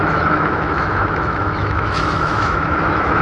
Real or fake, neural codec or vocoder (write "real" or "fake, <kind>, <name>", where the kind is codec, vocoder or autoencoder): fake, autoencoder, DAC-VAE